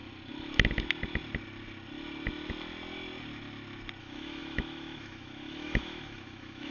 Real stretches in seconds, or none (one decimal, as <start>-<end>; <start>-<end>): 0.0-4.0

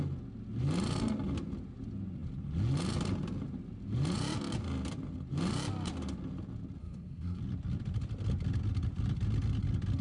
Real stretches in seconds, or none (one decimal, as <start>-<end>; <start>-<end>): 0.0-6.8; 7.4-10.0

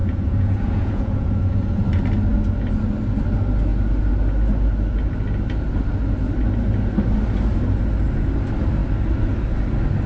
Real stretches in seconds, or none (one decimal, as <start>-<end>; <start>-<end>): 1.8-10.1

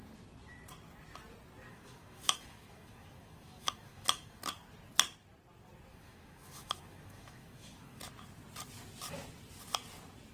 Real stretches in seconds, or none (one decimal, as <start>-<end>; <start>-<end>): 0.0-1.7; 4.4-5.9; 8.0-10.3